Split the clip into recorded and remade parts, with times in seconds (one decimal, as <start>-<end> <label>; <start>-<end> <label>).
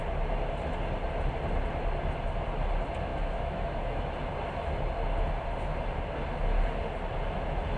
0.0-3.1 recorded; 3.1-4.1 remade; 4.1-7.8 recorded